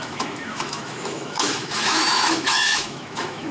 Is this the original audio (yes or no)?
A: no